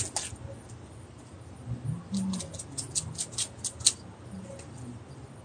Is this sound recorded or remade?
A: recorded